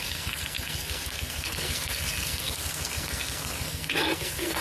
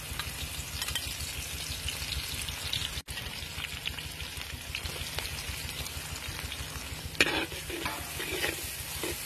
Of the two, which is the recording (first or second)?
second